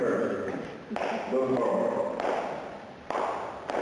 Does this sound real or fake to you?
real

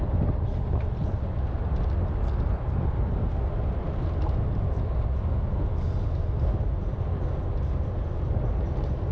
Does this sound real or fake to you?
real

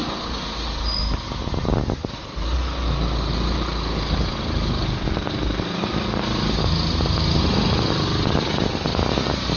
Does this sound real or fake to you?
real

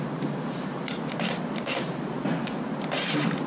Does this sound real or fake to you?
real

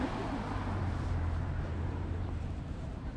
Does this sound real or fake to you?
fake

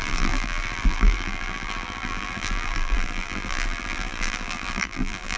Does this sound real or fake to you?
fake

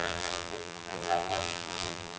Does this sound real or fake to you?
fake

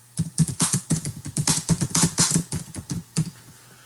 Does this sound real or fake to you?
fake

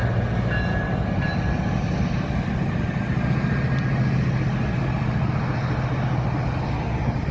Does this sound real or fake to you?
real